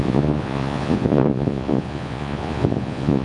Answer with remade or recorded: remade